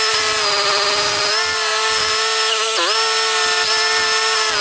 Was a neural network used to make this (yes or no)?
no